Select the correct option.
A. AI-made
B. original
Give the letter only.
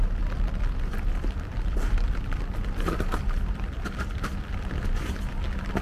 A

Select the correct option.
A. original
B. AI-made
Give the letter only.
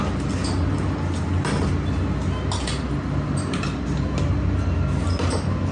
A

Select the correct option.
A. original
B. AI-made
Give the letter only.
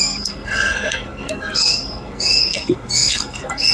B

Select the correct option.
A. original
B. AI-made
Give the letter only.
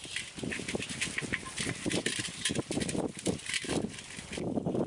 A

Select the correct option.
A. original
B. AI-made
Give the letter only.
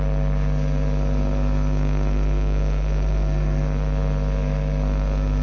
B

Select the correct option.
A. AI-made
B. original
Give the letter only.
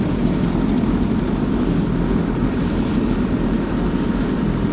B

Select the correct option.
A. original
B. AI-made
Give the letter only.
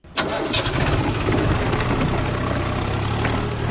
A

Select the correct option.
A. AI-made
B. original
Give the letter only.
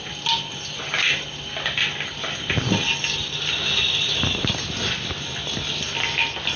B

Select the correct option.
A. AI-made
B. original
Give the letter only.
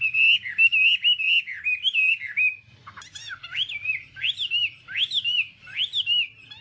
B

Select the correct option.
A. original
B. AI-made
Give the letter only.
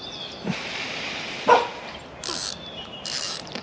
B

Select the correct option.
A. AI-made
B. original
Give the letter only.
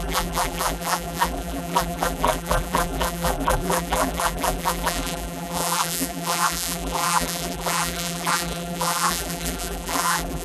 A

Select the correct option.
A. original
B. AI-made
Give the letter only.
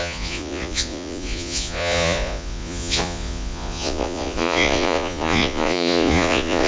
B